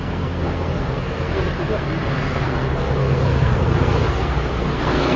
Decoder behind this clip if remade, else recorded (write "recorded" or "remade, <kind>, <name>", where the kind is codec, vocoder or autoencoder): remade, codec, SNAC